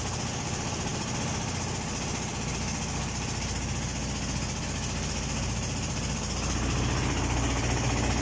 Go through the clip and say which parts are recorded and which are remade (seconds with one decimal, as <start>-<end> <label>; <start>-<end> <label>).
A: 0.0-8.2 recorded